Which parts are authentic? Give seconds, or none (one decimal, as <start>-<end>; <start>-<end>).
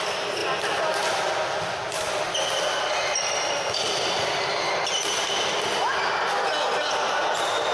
0.0-7.7